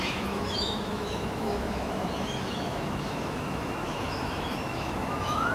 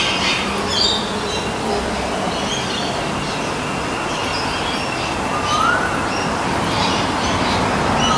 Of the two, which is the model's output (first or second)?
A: first